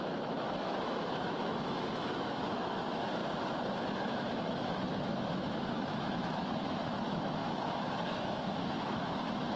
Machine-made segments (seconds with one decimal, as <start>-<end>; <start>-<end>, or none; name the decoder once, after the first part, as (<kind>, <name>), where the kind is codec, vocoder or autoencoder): 0.0-3.2 (autoencoder, DAC-VAE); 4.0-9.6